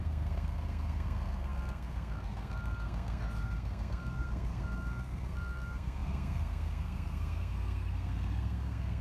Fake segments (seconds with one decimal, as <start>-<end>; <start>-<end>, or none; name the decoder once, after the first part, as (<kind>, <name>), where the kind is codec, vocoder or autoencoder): 0.0-9.0 (codec, SNAC)

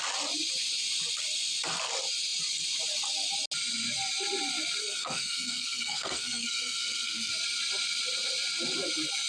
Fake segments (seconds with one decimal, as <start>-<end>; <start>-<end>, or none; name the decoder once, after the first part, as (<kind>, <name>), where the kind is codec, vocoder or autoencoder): 4.8-7.3 (codec, SNAC)

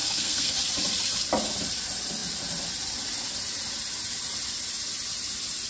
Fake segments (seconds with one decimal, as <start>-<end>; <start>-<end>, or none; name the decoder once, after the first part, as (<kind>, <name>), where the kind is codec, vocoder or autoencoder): 0.0-0.6 (codec, SNAC)